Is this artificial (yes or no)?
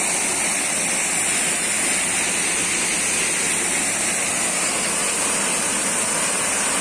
no